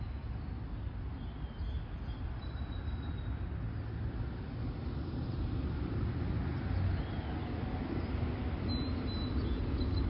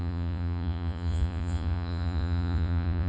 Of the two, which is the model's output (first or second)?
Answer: second